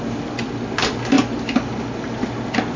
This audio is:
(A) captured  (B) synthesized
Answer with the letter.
A